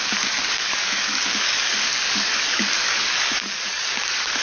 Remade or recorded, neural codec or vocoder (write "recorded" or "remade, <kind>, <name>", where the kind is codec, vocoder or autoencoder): remade, codec, DAC